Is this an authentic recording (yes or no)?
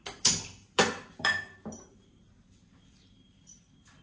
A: no